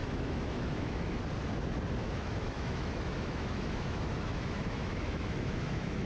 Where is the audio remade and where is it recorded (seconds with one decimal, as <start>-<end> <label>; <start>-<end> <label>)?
0.0-1.2 remade; 1.2-2.0 recorded; 2.0-6.1 remade